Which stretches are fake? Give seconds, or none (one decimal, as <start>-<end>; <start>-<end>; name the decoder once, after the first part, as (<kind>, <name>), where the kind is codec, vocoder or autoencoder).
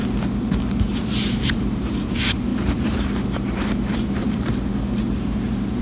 0.8-4.7 (vocoder, BigVGAN v2)